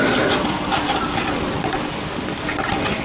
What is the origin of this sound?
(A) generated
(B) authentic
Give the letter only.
A